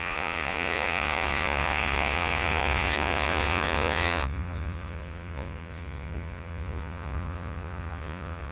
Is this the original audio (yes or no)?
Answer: no